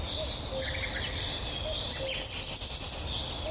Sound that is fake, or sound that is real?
fake